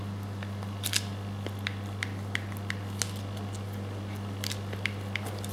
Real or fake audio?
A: real